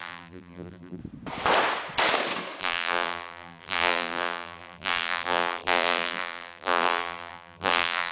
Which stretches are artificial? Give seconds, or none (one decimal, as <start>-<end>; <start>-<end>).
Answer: 0.0-1.0; 2.6-8.1